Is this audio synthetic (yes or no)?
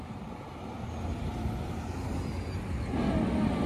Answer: no